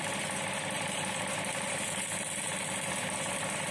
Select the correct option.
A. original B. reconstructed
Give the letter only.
A